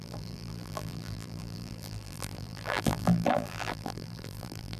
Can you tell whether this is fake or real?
fake